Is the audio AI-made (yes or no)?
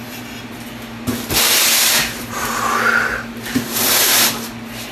no